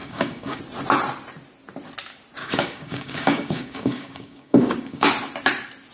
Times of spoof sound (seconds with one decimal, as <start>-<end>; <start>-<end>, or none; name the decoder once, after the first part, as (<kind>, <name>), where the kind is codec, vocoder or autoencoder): 0.0-0.6 (codec, DAC); 2.4-5.1

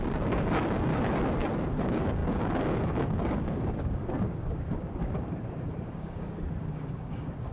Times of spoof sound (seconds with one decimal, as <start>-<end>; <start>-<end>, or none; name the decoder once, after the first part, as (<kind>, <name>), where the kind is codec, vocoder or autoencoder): 0.0-0.9 (codec, DAC); 1.8-7.5

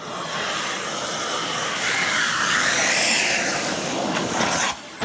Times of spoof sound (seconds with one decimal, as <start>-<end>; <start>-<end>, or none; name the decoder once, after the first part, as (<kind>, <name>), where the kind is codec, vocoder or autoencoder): 1.4-4.4 (codec, DAC)

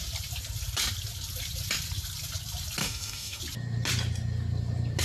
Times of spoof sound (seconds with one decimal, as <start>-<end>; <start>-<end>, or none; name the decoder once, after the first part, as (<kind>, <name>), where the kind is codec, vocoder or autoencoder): 2.8-3.4 (codec, DAC)